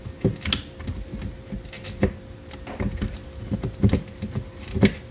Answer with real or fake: real